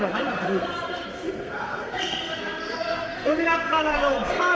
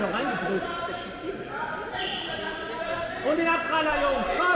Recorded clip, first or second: second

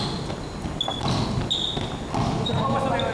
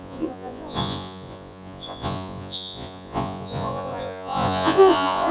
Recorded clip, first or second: first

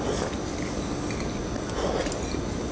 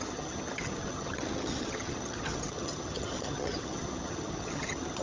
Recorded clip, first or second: first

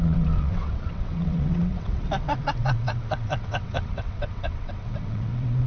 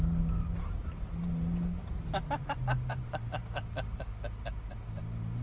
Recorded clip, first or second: second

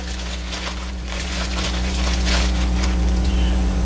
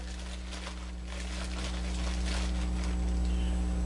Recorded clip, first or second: second